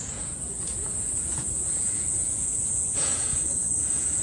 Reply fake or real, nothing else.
fake